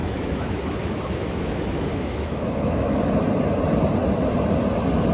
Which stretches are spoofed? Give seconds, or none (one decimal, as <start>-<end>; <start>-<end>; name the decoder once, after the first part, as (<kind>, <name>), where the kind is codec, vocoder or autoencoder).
0.0-3.1 (autoencoder, DAC-VAE)

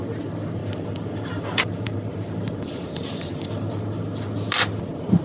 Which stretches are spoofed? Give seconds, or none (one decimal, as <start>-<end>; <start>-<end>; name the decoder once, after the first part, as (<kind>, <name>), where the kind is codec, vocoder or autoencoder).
0.6-3.7 (vocoder, BigVGAN v2)

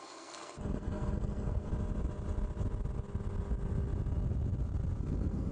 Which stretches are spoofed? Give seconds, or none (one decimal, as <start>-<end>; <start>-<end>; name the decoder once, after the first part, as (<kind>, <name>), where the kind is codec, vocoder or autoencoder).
0.0-1.7 (codec, SNAC); 5.0-5.5

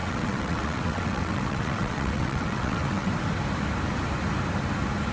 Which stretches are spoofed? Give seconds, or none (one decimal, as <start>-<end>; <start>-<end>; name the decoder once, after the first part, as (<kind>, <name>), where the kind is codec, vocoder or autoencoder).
0.0-3.1 (vocoder, WaveNeXt)

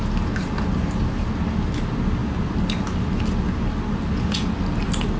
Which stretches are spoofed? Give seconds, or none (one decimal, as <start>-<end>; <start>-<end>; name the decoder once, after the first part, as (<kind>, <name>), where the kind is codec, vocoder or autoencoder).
none

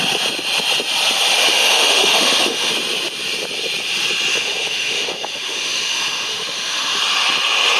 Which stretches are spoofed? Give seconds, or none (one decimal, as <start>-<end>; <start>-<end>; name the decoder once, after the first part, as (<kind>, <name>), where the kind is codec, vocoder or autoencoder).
1.4-2.7 (autoencoder, DAC-VAE); 4.3-7.0

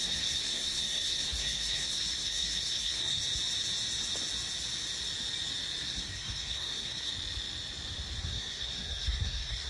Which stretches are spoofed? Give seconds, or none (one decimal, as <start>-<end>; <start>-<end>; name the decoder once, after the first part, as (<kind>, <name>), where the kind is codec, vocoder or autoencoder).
0.0-3.2 (codec, SNAC); 5.8-7.1; 8.2-9.7